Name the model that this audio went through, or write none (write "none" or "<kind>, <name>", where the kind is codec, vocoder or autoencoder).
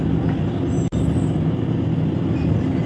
none